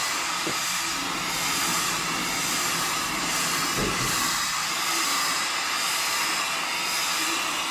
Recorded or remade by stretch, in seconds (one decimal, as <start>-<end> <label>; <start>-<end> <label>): 0.0-1.0 remade; 1.0-1.7 recorded; 1.7-3.6 remade; 3.6-4.6 recorded; 4.6-6.0 remade; 6.0-7.7 recorded